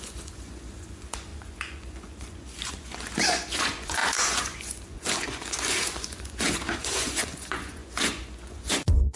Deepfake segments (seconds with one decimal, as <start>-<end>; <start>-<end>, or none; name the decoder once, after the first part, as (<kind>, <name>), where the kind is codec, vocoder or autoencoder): 0.0-9.2 (vocoder, Vocos)